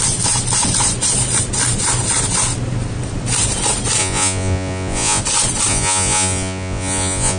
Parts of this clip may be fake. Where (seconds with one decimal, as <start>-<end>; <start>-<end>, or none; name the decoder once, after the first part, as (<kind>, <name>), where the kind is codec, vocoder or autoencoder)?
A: 4.0-5.2 (vocoder, Vocos); 5.7-7.4